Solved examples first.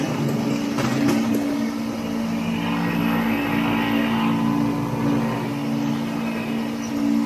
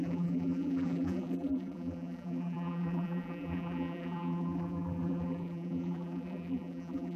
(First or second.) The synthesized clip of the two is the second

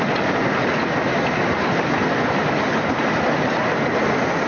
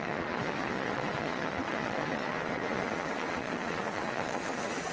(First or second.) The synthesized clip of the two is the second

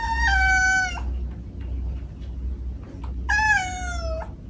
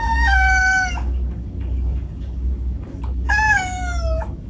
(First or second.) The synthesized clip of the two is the second